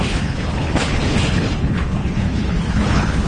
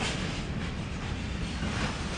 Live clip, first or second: second